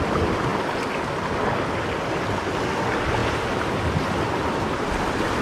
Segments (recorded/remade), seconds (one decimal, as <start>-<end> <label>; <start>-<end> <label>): 0.0-5.4 recorded